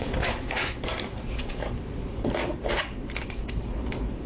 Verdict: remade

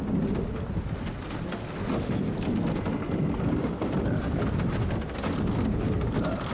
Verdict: recorded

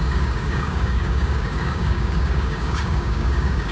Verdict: remade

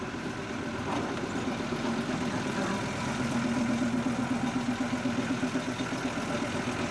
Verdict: recorded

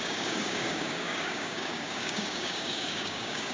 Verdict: remade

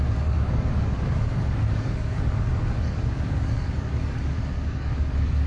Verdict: remade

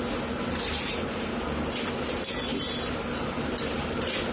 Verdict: recorded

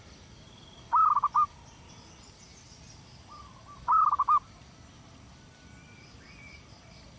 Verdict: recorded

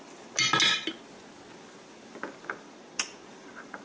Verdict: recorded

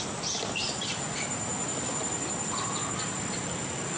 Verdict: recorded